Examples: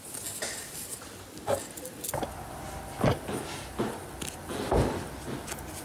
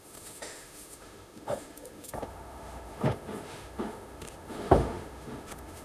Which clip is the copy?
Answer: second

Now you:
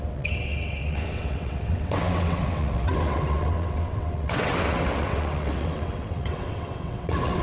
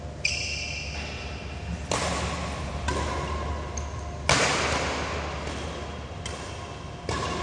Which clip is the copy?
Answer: first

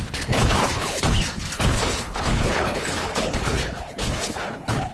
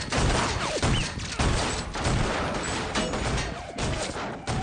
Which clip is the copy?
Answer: first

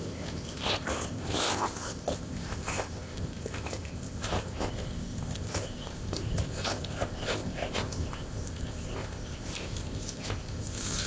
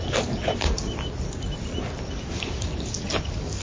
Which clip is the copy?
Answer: first